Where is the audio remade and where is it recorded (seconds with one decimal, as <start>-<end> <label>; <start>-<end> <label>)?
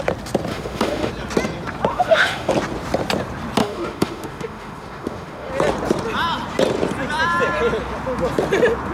0.0-0.5 recorded; 0.5-1.1 remade; 1.1-1.9 recorded; 1.9-2.5 remade; 2.5-3.6 recorded; 3.6-5.5 remade; 5.5-8.9 recorded